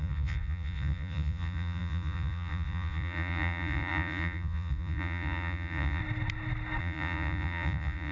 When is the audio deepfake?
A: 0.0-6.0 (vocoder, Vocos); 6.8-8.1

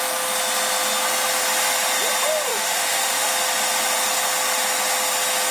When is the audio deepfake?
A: 2.5-3.3 (autoencoder, DAC-VAE)

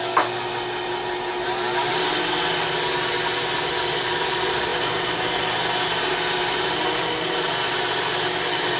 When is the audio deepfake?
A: 0.0-4.7 (vocoder, BigVGAN v2); 6.0-8.8

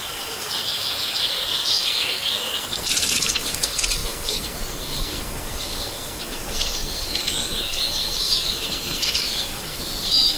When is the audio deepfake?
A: 0.0-10.4 (codec, SNAC)